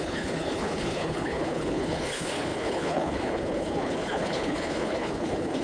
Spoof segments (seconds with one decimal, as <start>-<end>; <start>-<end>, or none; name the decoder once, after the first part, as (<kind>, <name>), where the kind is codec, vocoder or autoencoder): 0.0-5.6 (codec, HILCodec)